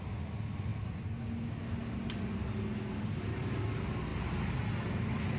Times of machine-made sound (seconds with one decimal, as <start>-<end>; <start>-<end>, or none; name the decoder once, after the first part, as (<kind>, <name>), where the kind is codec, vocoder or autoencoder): none